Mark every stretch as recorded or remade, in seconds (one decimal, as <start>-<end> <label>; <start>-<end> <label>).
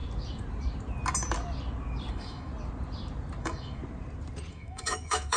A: 0.0-2.1 recorded; 2.1-2.5 remade; 2.5-3.4 recorded; 3.4-3.8 remade; 3.8-4.5 recorded; 4.5-5.4 remade